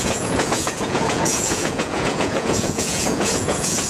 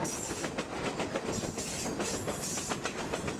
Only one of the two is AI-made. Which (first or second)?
first